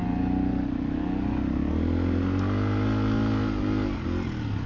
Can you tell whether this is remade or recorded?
recorded